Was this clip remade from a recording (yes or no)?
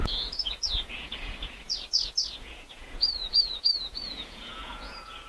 yes